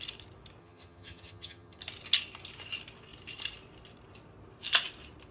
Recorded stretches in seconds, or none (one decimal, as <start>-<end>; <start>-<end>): 0.0-0.6; 1.8-5.3